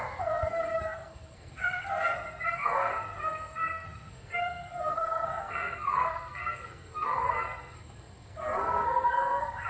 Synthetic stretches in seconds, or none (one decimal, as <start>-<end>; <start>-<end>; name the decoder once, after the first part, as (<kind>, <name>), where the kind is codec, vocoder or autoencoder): 0.0-9.7 (codec, SNAC)